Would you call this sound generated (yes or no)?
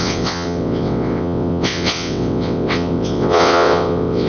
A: yes